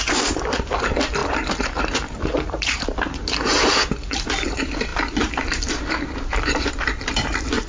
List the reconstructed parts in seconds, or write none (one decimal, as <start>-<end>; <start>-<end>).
0.0-3.2; 4.0-7.7

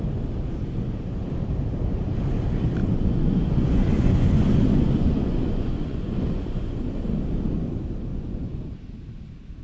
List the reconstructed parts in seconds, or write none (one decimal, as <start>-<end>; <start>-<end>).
2.8-6.9; 8.1-8.7

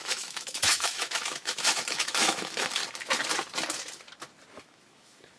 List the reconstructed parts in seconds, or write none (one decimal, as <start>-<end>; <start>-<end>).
0.0-2.8; 4.6-5.4

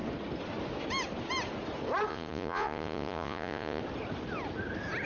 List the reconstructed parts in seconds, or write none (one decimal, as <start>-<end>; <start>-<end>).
2.1-3.8